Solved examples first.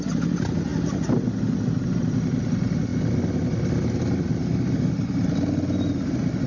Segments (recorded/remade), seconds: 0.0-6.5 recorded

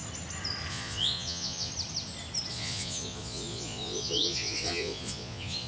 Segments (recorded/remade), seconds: 0.0-0.7 recorded; 0.7-1.7 remade; 1.7-2.5 recorded; 2.5-5.7 remade

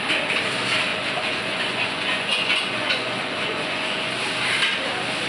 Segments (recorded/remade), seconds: 0.0-0.9 recorded; 0.9-4.1 remade; 4.1-5.3 recorded